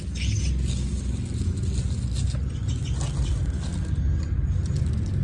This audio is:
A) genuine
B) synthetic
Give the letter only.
A